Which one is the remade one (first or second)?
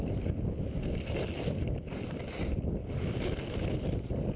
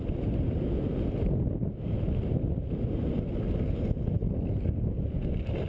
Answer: first